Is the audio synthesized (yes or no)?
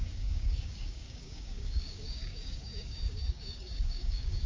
yes